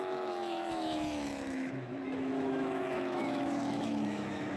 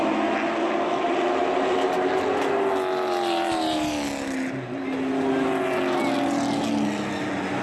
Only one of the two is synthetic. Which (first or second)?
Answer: first